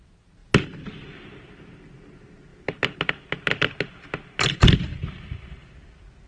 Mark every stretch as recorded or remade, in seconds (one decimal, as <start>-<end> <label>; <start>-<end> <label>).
0.0-6.3 recorded